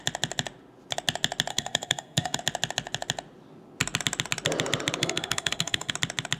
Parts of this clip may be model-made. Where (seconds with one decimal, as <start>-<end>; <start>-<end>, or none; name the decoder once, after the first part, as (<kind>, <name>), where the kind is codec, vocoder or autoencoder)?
1.5-2.4 (codec, SNAC); 5.0-5.9